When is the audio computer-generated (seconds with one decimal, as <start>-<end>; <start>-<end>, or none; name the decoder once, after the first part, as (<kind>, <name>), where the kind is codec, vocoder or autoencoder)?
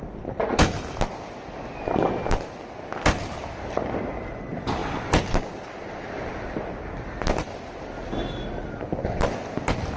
none